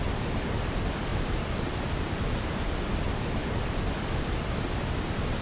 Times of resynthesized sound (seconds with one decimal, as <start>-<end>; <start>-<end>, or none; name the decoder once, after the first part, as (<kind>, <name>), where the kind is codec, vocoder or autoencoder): 1.1-2.7 (vocoder, BigVGAN v2)